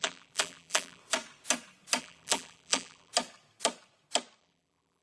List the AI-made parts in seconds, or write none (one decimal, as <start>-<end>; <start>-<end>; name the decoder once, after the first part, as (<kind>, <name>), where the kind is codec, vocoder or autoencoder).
0.0-1.0 (vocoder, BigVGAN v2); 2.0-3.1; 4.4-5.0